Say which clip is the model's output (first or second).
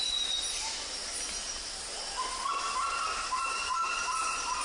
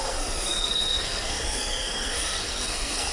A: second